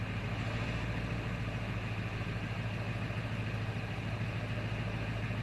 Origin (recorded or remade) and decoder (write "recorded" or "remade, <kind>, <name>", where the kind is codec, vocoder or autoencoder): recorded